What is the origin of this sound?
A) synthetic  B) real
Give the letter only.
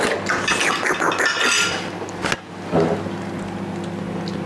B